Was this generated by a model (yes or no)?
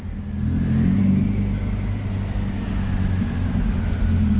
no